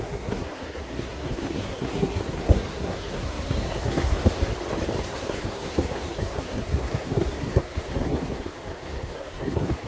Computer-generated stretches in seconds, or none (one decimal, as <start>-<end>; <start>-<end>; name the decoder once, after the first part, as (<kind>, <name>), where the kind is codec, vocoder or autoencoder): 0.0-4.5 (codec, SNAC); 5.0-9.9